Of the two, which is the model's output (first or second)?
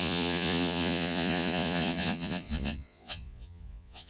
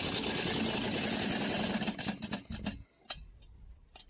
first